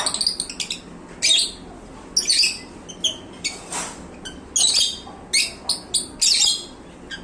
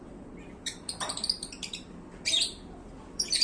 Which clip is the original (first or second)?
first